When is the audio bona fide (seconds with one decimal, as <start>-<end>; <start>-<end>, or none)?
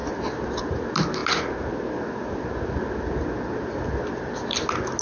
0.0-5.0